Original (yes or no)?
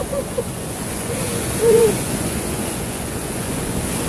no